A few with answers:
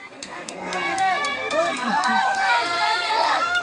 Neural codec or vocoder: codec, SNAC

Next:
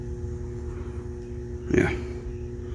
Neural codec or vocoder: none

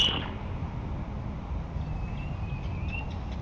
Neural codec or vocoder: none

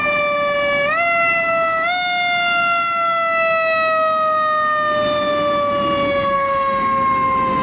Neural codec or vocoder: none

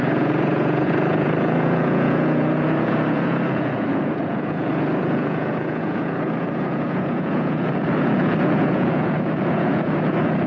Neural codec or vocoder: vocoder, Vocos